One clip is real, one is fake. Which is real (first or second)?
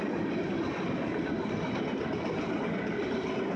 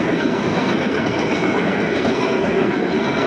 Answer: first